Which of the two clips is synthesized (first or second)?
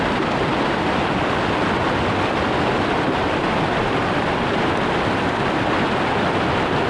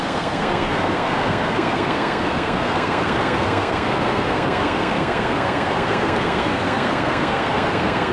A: second